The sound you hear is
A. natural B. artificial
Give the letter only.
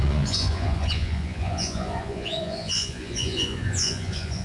B